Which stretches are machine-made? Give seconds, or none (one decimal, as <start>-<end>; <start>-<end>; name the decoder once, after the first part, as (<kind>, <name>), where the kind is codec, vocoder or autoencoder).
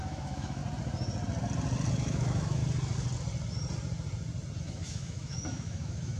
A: 0.0-0.6 (autoencoder, DAC-VAE); 1.9-2.6; 4.6-6.2